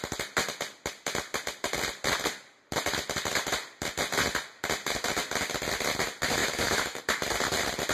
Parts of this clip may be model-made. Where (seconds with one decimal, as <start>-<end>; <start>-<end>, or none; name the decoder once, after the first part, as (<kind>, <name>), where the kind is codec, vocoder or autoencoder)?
6.4-7.0 (autoencoder, DAC-VAE)

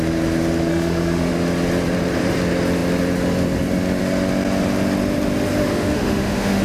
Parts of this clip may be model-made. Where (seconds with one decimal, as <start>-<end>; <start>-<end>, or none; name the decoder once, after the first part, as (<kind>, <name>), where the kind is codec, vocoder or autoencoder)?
0.7-1.3 (autoencoder, DAC-VAE); 5.6-6.6

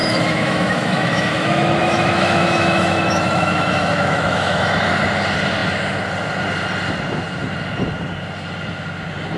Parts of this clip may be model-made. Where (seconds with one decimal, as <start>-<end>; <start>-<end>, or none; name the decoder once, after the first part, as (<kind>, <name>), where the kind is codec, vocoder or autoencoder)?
0.0-4.9 (autoencoder, DAC-VAE)